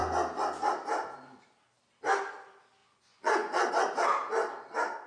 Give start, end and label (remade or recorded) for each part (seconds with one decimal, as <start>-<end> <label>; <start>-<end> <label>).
0.0-2.8 recorded; 2.8-3.7 remade; 3.7-5.1 recorded